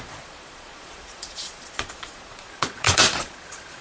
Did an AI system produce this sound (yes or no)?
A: yes